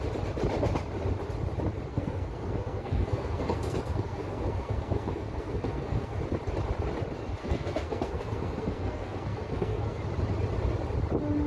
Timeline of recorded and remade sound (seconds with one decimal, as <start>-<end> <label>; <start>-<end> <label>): 0.0-1.9 recorded; 1.9-6.2 remade; 6.2-7.4 recorded; 7.4-10.0 remade; 10.0-11.5 recorded